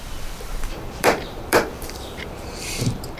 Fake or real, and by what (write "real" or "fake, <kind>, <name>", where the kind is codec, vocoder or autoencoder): fake, vocoder, BigVGAN v2